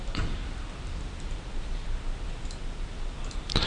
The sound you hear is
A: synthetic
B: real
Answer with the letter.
B